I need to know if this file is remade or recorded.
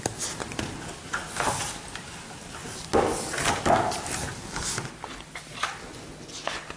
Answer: recorded